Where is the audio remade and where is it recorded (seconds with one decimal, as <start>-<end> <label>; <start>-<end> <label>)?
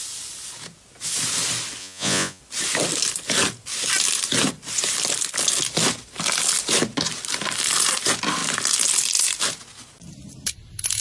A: 0.0-1.8 recorded; 1.8-2.4 remade; 2.4-11.0 recorded